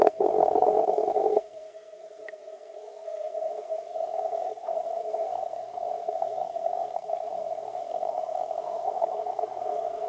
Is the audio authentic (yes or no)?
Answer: no